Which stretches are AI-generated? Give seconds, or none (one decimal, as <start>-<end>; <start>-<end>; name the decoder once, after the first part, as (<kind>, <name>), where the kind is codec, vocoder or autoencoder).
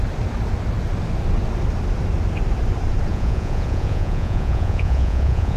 3.1-5.6 (vocoder, Vocos)